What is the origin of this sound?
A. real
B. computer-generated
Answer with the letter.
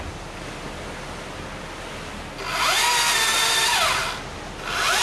A